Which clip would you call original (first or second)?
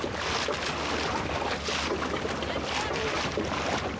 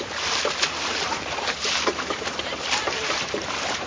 first